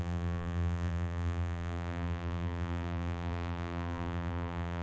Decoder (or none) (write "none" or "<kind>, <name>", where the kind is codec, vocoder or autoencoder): vocoder, BigVGAN v2